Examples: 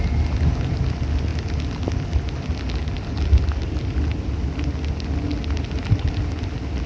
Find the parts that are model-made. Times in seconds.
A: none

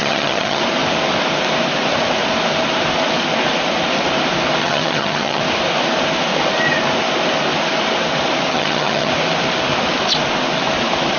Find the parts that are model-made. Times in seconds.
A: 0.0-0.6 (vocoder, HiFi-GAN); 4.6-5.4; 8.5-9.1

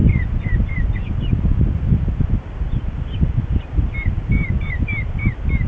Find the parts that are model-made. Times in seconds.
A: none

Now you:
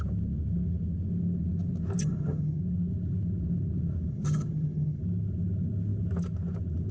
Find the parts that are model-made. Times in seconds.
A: 2.0-2.6 (vocoder, HiFi-GAN); 4.1-5.0

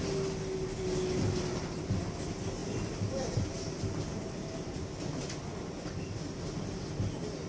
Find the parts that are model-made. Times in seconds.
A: none